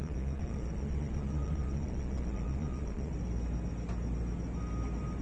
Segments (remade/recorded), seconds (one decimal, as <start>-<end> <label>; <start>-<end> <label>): 0.0-3.1 remade; 3.1-5.2 recorded